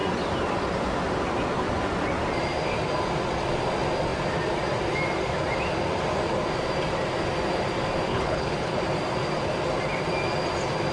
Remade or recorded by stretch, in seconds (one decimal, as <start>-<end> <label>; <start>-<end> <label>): 0.0-8.1 recorded; 8.1-8.8 remade; 8.8-10.9 recorded